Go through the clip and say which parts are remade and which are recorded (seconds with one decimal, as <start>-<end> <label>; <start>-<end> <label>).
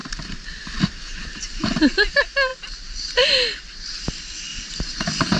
0.0-1.7 remade; 1.7-2.5 recorded; 2.5-3.1 remade; 3.1-4.5 recorded; 4.5-5.4 remade